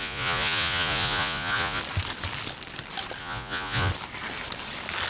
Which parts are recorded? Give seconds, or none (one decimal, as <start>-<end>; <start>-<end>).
1.8-3.2; 3.9-5.1